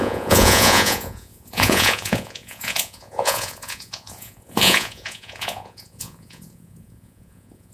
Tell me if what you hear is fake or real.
fake